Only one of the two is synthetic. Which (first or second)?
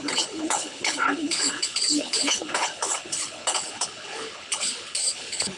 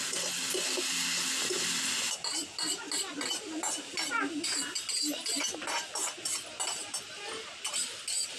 first